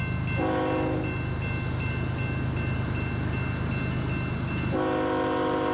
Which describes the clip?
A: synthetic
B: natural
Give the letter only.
B